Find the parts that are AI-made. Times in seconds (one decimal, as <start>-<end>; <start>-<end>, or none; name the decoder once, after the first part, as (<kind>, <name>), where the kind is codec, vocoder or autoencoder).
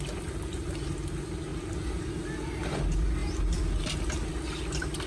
none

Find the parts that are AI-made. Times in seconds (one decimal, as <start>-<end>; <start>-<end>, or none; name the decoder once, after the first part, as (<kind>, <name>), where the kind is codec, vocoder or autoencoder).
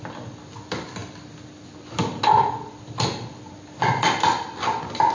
none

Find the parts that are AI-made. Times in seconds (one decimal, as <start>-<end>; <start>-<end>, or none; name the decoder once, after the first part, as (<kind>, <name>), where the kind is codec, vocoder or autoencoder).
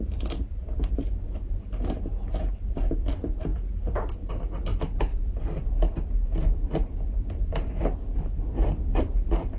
0.0-9.6 (vocoder, BigVGAN v2)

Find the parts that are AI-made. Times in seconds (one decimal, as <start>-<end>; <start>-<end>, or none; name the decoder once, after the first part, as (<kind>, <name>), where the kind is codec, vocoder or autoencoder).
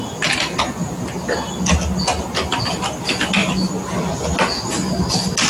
none